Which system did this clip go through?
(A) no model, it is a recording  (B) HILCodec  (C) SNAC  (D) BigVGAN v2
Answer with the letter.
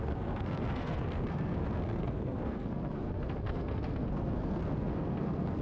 C